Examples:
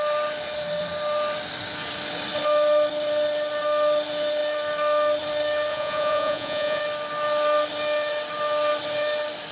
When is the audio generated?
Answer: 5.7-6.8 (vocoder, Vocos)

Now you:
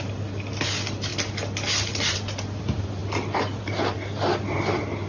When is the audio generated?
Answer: none

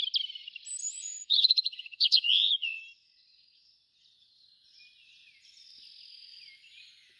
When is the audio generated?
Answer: 0.8-2.8 (vocoder, Vocos)

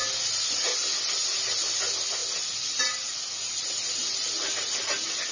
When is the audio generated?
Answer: none

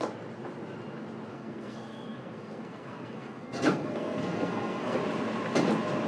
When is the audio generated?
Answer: 1.3-5.0 (codec, SNAC)

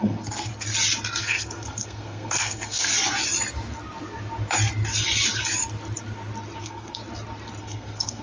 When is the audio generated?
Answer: 0.0-0.5 (codec, SNAC); 1.2-2.9; 6.6-7.0; 7.6-8.2